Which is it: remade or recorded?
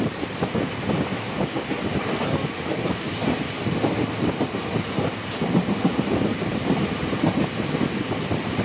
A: recorded